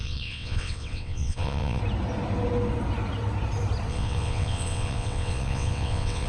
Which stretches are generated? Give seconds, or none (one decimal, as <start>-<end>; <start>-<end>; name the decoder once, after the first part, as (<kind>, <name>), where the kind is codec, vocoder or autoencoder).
0.0-1.8 (vocoder, WaveNeXt); 3.9-6.3